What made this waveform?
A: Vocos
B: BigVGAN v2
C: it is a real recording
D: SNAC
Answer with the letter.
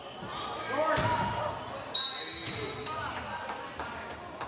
C